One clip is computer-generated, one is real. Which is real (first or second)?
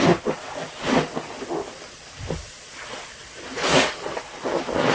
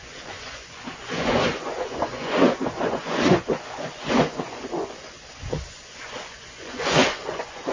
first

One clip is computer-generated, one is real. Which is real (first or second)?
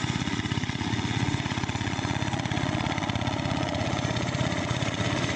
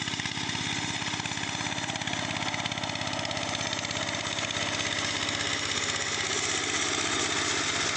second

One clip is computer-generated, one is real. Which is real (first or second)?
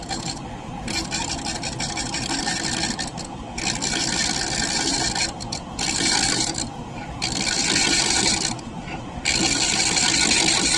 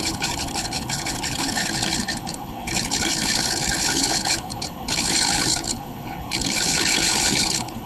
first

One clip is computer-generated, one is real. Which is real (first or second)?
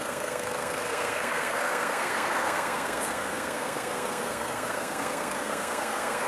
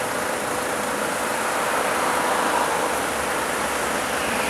second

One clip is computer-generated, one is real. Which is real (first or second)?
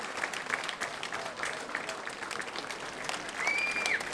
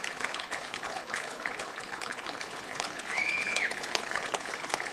first